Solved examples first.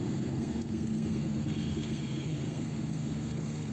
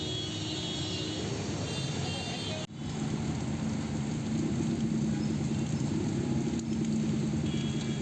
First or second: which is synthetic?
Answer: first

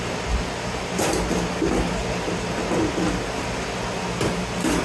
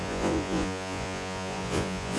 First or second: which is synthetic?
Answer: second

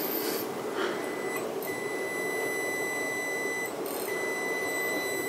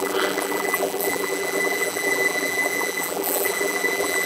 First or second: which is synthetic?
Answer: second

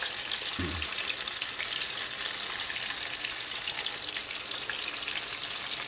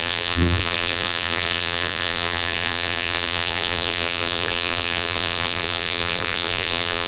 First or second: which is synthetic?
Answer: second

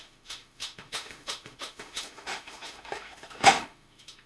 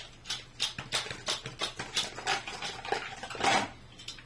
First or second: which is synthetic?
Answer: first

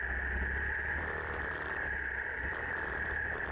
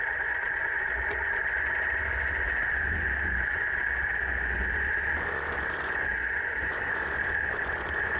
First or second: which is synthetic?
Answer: second